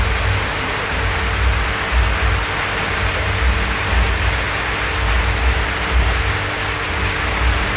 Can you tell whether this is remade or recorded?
recorded